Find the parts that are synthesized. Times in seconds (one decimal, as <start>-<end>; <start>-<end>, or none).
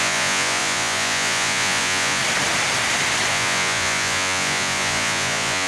0.0-2.2; 3.3-5.7